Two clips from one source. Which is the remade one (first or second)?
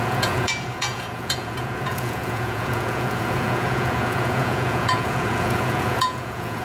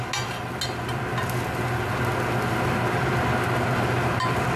first